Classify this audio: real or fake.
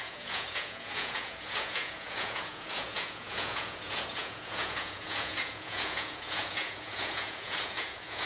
fake